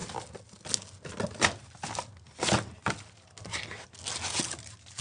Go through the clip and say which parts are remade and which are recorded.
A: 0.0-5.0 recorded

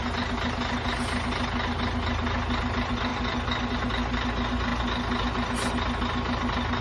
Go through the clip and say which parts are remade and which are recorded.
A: 0.0-6.8 recorded

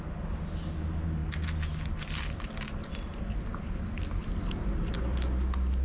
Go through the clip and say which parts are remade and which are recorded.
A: 0.0-5.8 recorded

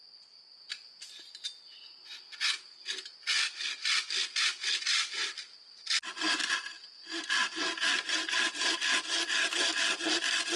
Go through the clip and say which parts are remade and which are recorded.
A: 0.0-10.6 recorded

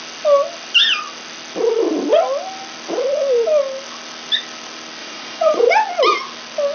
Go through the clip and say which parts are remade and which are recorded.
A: 0.0-5.0 recorded; 5.0-5.7 remade; 5.7-6.7 recorded

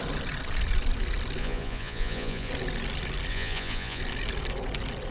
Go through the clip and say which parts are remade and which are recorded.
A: 0.0-1.4 recorded; 1.4-2.5 remade; 2.5-3.3 recorded; 3.3-4.0 remade; 4.0-5.1 recorded

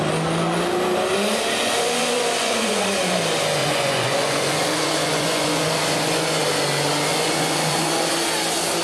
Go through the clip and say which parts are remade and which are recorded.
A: 0.0-1.6 recorded; 1.6-3.2 remade; 3.2-3.6 recorded; 3.6-6.4 remade; 6.4-7.1 recorded; 7.1-8.1 remade; 8.1-8.8 recorded